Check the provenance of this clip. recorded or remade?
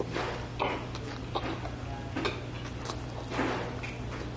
recorded